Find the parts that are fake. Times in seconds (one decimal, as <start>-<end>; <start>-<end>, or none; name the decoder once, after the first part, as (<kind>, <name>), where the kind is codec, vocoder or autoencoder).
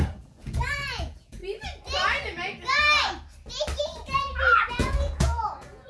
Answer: 0.0-1.4 (vocoder, Vocos); 4.7-5.9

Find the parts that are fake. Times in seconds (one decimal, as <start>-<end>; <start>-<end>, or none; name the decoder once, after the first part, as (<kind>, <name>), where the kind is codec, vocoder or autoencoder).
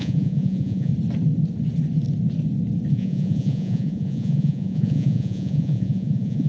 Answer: 0.0-0.9 (vocoder, Vocos); 2.9-6.5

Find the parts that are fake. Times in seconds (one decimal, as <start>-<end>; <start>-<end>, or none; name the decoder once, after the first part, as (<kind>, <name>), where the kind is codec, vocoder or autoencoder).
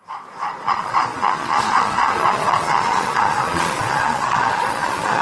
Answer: 0.0-5.2 (vocoder, Vocos)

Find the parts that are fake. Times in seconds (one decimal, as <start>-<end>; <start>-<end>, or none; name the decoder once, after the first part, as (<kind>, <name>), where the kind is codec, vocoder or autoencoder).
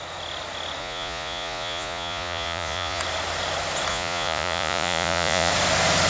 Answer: 0.8-3.0 (vocoder, Vocos); 3.9-5.5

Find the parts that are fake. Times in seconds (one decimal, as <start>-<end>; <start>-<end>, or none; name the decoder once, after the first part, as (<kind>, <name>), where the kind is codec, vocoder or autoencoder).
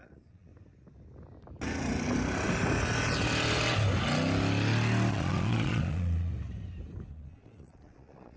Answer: 0.0-0.5 (vocoder, Vocos); 5.1-6.3; 7.1-8.4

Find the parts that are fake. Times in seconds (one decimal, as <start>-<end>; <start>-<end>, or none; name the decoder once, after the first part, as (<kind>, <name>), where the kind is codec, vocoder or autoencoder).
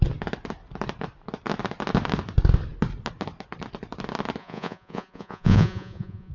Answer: 4.4-6.3 (vocoder, Vocos)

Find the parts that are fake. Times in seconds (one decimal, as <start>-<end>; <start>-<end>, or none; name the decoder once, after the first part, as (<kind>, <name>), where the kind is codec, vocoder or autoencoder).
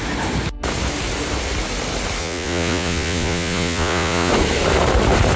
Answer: 2.2-4.3 (vocoder, Vocos)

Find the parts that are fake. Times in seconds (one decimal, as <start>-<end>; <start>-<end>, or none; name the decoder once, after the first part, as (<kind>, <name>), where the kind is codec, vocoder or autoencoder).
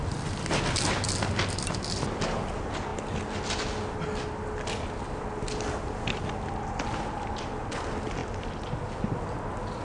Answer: none